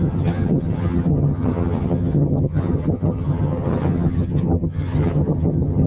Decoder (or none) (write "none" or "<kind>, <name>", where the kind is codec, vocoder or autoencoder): vocoder, HiFi-GAN